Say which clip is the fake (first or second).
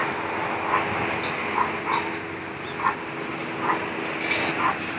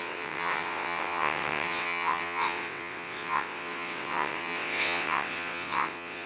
second